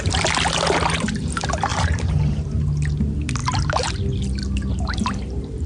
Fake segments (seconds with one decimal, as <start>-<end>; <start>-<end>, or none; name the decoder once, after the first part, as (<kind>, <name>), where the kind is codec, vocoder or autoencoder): 1.7-2.6 (vocoder, BigVGAN v2); 3.4-3.9; 4.4-5.7